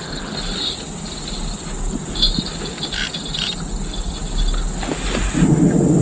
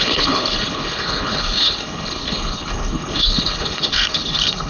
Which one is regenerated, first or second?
second